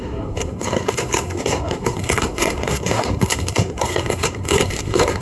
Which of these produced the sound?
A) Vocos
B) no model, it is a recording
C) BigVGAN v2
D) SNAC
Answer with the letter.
D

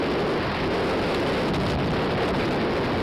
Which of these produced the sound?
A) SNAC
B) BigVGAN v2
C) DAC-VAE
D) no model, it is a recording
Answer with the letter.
D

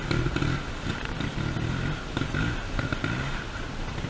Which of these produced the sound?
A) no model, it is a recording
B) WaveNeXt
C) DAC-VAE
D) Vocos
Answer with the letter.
A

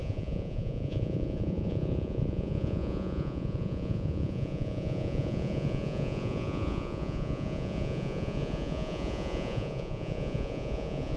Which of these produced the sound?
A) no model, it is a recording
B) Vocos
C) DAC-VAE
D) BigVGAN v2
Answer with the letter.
B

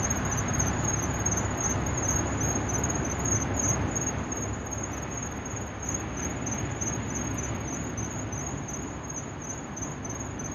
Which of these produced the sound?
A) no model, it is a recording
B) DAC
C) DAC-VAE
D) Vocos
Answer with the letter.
A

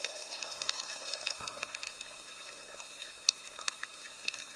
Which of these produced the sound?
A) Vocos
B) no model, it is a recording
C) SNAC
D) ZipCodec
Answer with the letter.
C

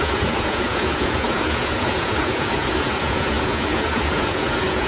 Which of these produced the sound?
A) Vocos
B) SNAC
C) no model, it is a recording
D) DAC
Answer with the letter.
A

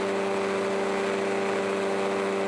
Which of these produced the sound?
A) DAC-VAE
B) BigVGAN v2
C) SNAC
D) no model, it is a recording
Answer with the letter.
D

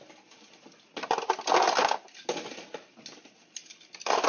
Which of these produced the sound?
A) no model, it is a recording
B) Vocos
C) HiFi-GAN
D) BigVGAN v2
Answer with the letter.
A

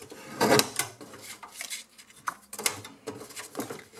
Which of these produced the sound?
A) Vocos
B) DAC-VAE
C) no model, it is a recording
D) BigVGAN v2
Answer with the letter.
C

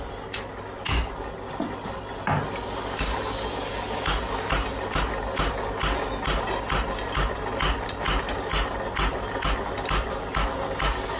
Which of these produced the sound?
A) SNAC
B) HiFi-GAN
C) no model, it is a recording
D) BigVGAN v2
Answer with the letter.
C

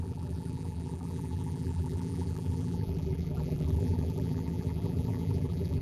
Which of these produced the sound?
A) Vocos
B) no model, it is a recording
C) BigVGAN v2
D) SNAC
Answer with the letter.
C